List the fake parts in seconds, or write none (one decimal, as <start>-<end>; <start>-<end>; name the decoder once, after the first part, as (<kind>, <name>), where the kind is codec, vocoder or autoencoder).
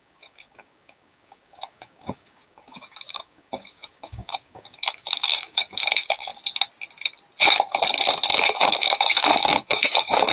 0.0-6.3 (codec, DAC); 8.3-10.3